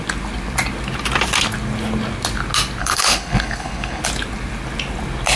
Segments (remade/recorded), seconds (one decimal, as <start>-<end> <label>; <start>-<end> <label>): 0.0-2.8 recorded; 2.8-4.0 remade; 4.0-5.4 recorded